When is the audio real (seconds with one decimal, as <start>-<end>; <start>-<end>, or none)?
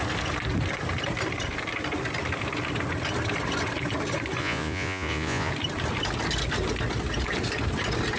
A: 0.0-4.4; 5.5-8.2